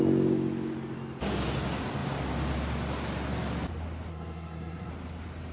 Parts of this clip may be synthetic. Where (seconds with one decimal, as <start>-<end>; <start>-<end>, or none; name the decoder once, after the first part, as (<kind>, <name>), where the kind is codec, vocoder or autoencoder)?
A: 4.1-4.9 (codec, SNAC)